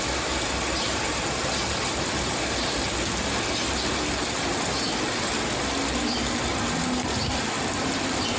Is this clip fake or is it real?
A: real